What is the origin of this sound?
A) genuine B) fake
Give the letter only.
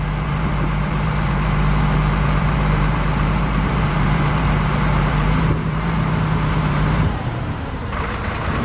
B